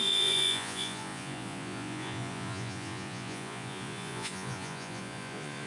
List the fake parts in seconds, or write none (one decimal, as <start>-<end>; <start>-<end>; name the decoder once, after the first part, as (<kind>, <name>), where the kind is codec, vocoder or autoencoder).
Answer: 0.0-5.7 (vocoder, Vocos)